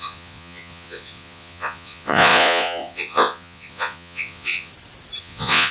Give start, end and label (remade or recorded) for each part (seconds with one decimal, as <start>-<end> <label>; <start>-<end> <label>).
0.0-4.7 remade; 4.7-5.2 recorded; 5.2-5.7 remade